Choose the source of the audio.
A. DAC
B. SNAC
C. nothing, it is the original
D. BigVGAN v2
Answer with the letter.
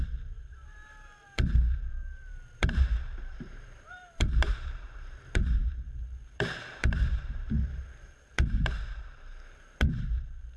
D